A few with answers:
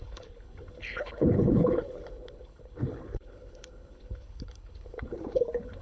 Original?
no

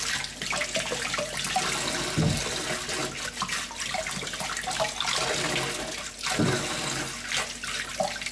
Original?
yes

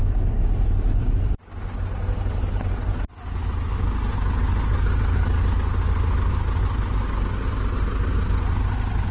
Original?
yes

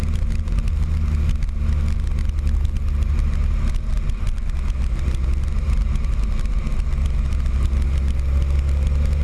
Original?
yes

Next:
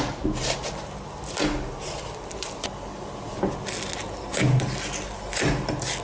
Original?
yes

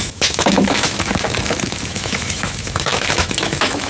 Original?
no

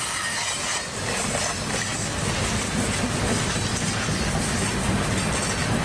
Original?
yes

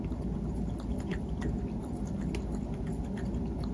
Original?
yes